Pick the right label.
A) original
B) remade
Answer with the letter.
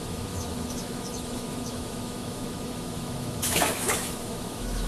B